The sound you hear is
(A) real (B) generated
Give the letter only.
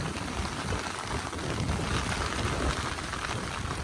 B